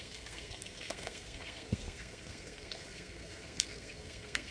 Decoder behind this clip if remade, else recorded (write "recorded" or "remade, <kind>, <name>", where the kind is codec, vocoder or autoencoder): remade, codec, SNAC